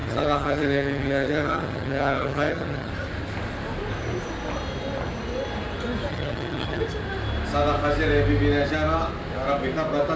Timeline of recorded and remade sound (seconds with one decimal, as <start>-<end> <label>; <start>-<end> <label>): 0.0-2.9 remade; 2.9-6.1 recorded; 6.1-6.8 remade; 6.8-10.2 recorded